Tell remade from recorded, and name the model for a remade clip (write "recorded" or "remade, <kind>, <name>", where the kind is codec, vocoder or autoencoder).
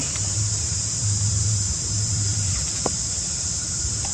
remade, vocoder, BigVGAN v2